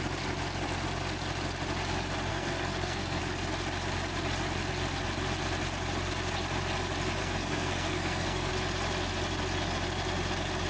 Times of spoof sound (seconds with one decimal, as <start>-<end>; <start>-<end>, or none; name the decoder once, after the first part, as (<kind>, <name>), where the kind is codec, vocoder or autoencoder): 2.3-3.2 (codec, SNAC); 7.2-8.5